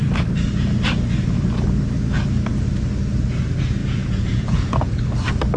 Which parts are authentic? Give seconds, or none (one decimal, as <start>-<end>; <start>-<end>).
0.0-3.8; 5.0-5.6